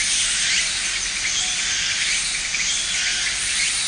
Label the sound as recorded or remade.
recorded